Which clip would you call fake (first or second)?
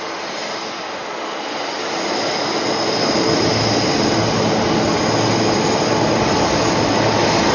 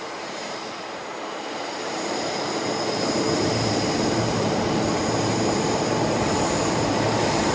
second